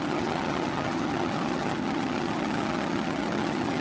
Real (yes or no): no